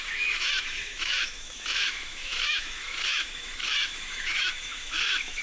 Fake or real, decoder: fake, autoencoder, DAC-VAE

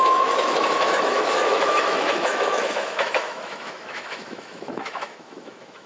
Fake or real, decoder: fake, autoencoder, DAC-VAE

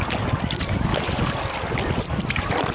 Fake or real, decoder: real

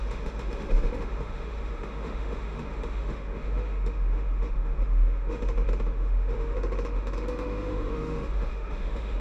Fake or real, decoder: fake, autoencoder, DAC-VAE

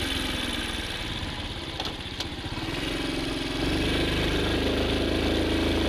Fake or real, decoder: real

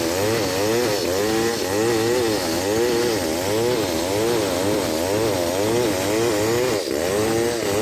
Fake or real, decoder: real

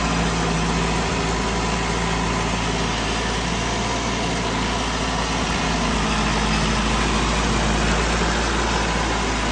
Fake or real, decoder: real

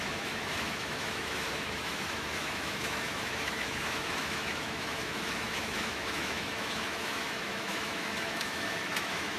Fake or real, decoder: fake, autoencoder, DAC-VAE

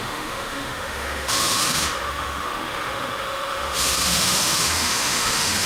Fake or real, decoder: fake, autoencoder, DAC-VAE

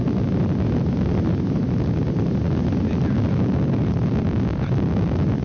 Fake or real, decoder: real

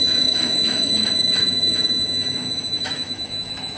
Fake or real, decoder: fake, autoencoder, DAC-VAE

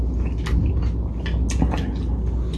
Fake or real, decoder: real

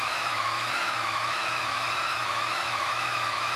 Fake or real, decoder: fake, autoencoder, DAC-VAE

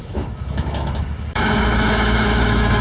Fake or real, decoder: fake, autoencoder, DAC-VAE